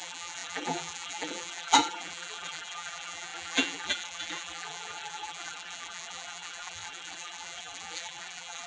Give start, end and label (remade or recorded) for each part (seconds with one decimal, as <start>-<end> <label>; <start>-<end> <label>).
0.0-8.7 remade